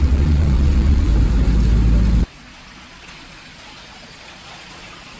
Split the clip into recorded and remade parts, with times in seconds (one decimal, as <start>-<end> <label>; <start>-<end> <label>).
0.0-1.1 remade; 1.1-2.2 recorded; 2.2-5.2 remade

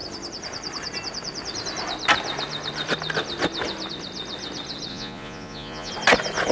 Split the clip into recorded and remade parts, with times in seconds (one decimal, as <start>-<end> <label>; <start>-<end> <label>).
0.0-4.9 recorded; 4.9-5.9 remade; 5.9-6.5 recorded

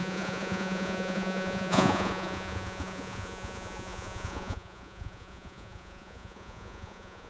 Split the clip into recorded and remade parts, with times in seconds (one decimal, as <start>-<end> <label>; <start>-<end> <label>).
0.0-7.3 remade

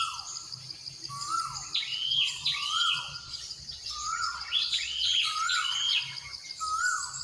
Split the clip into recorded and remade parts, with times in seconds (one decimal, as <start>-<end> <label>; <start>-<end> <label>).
0.0-1.9 recorded; 1.9-6.0 remade; 6.0-7.2 recorded

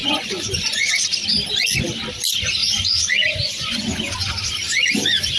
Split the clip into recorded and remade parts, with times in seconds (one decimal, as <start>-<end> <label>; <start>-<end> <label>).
0.0-0.9 remade; 0.9-2.6 recorded; 2.6-4.3 remade; 4.3-5.4 recorded